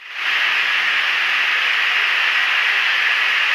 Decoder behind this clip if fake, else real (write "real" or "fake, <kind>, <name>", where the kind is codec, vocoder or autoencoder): real